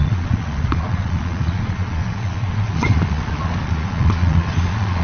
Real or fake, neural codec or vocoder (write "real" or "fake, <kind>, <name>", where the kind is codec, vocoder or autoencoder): fake, vocoder, Vocos